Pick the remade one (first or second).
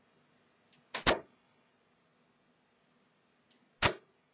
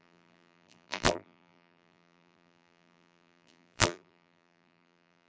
second